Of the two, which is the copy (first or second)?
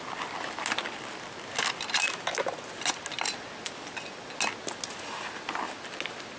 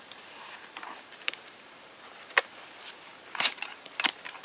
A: second